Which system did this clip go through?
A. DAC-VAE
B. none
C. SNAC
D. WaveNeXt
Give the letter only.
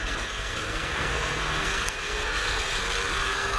C